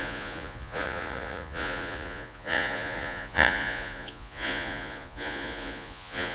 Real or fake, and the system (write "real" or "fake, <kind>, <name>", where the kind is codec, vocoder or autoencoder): fake, vocoder, Vocos